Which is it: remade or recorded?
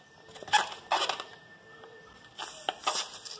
recorded